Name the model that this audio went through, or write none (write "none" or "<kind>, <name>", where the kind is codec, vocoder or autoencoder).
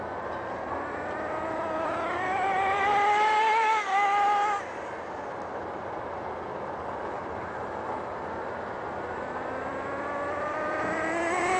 vocoder, BigVGAN v2